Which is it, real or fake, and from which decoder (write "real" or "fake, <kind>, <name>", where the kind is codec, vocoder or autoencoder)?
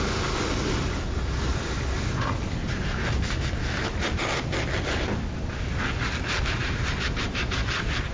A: real